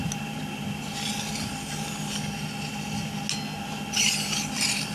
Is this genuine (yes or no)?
yes